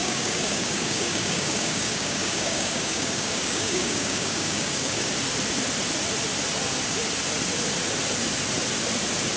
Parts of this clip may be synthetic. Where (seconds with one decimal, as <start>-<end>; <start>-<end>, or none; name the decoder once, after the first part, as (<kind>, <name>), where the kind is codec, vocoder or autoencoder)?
0.0-5.1 (codec, DAC)